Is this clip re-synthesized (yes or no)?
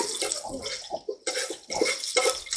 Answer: no